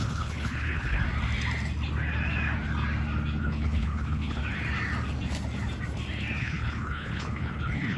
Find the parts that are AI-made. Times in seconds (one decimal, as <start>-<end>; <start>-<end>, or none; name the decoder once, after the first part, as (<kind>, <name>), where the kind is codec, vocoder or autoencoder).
0.0-1.0 (codec, HILCodec); 3.4-4.4; 6.4-8.0

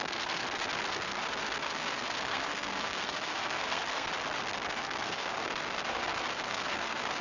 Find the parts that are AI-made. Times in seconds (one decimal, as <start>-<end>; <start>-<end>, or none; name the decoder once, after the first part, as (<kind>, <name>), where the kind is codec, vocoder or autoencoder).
0.0-0.4 (codec, SNAC); 0.9-4.1; 4.7-7.2

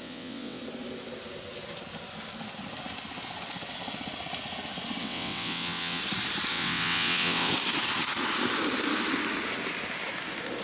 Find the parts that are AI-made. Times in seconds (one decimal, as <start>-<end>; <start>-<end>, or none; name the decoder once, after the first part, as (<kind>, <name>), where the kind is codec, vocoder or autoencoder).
0.0-0.6 (vocoder, WaveNeXt); 5.0-6.0; 6.5-7.5

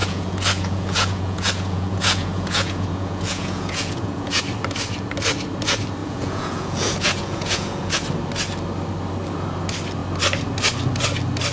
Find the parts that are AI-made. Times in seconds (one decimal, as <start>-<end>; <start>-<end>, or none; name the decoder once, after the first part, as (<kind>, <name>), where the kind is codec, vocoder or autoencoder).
0.0-4.4 (vocoder, Vocos); 6.0-7.9

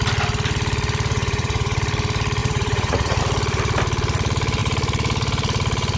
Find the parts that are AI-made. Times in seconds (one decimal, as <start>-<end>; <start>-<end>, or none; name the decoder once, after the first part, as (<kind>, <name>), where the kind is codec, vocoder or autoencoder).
1.1-1.8 (vocoder, Vocos); 2.4-3.2